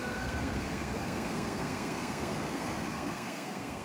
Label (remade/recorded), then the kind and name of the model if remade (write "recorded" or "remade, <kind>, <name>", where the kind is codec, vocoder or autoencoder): remade, codec, SNAC